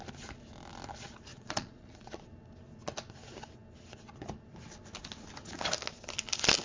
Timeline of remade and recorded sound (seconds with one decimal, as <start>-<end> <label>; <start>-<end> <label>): 0.0-1.3 recorded; 1.3-2.1 remade; 2.1-6.6 recorded